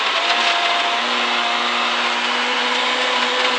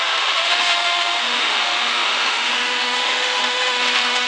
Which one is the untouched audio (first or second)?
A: first